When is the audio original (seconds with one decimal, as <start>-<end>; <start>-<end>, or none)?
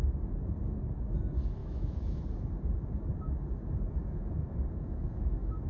0.0-1.6; 2.2-4.0